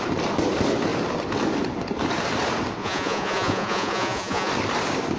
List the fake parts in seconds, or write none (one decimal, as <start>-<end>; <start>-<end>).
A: 2.8-4.5